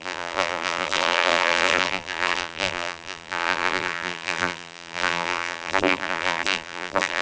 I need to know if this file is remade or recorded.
remade